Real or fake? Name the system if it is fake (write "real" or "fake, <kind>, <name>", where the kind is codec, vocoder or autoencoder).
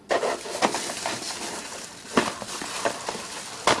real